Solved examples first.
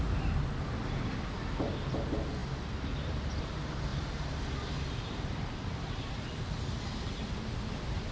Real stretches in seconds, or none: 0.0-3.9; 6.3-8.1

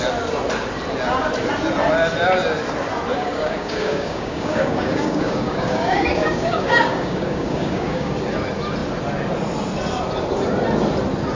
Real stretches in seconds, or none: 0.0-3.1; 8.1-11.3

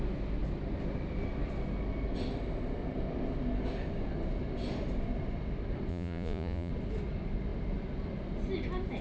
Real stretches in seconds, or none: 0.0-5.9; 6.7-9.0